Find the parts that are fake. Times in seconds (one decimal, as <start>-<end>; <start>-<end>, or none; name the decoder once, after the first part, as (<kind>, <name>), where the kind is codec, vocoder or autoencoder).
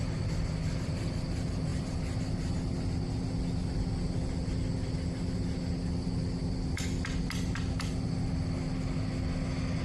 none